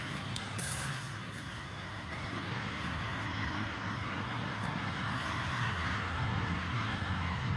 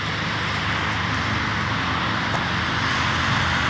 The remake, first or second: first